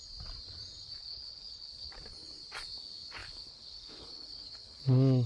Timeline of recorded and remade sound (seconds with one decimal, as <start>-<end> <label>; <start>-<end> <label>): 0.0-1.0 recorded; 1.0-1.9 remade; 1.9-3.2 recorded; 3.2-4.8 remade; 4.8-5.3 recorded